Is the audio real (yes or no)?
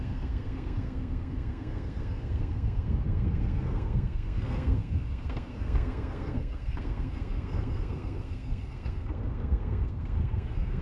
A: no